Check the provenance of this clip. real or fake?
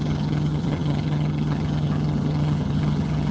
fake